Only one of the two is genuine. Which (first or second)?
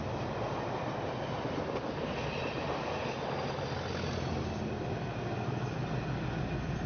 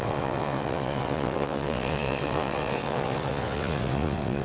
first